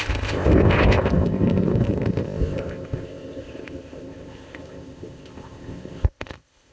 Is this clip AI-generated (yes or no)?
yes